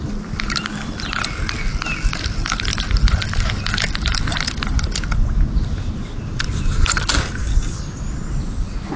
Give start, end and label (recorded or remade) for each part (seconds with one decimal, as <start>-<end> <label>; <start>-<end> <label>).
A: 0.0-9.0 recorded